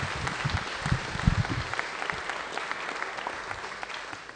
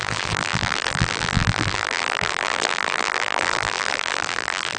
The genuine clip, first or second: first